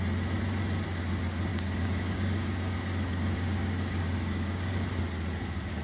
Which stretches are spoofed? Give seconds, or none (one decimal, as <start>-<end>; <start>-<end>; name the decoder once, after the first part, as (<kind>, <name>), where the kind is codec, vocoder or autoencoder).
1.5-4.8 (codec, DAC)